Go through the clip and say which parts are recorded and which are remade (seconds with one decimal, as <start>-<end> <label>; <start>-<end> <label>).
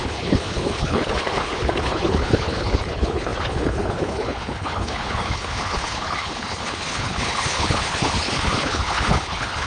0.0-9.7 remade